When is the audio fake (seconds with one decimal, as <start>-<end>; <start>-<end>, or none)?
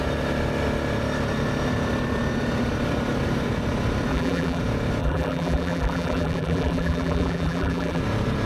4.1-4.6; 5.0-8.0